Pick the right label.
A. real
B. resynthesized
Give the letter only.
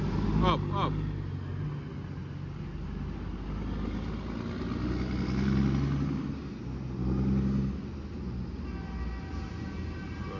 A